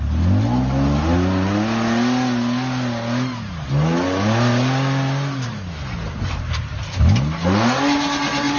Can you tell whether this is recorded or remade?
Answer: recorded